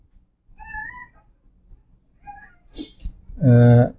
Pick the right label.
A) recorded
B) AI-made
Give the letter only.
A